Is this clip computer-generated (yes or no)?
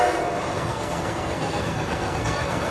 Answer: yes